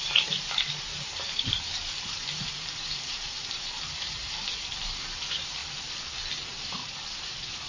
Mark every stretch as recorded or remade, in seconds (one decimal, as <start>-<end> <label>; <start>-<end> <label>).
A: 0.0-5.6 remade; 5.6-6.3 recorded; 6.3-7.7 remade